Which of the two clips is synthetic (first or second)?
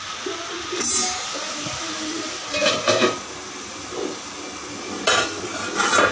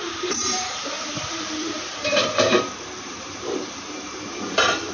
second